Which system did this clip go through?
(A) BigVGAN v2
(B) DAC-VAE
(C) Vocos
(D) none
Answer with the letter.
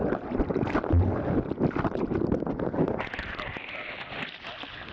D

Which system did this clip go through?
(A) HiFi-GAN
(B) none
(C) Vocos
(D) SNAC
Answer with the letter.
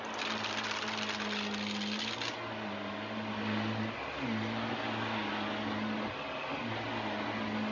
B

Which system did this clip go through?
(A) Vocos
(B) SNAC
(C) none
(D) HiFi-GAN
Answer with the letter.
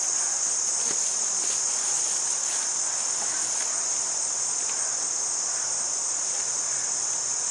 C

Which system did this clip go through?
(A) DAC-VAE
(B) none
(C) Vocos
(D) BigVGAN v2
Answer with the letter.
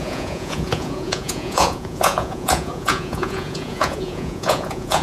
C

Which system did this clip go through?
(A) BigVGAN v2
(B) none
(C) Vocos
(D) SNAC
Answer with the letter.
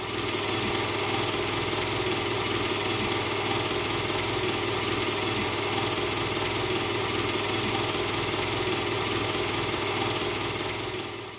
B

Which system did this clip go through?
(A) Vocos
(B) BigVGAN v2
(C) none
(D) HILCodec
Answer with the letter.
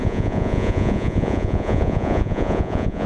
A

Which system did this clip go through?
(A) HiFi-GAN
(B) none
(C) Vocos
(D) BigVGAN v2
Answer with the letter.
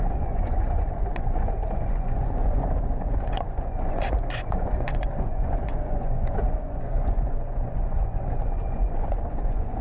C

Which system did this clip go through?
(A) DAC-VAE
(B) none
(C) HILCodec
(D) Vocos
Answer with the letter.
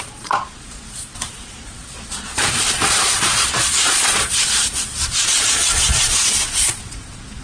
D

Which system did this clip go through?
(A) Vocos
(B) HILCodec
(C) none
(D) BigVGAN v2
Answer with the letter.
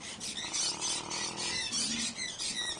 C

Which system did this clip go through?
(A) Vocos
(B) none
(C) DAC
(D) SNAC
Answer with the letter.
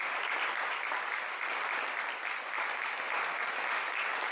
B